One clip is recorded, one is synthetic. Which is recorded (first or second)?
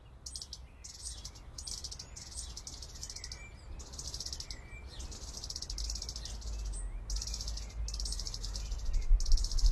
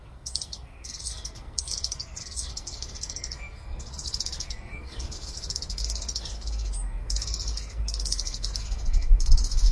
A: first